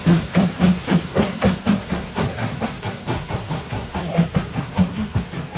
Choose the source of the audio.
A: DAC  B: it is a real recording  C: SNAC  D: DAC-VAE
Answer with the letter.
C